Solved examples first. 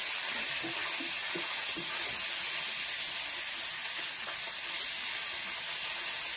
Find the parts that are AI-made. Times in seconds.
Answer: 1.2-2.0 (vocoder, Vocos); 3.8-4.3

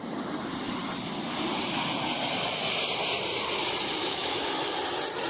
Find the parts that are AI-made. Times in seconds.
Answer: 4.0-4.7 (autoencoder, DAC-VAE)